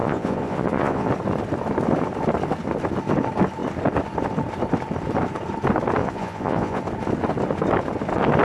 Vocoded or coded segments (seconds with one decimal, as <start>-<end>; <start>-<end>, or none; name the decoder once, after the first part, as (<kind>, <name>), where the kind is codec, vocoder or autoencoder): 0.0-1.1 (vocoder, Vocos); 6.0-6.8